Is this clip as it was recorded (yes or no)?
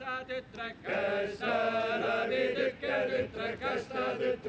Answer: yes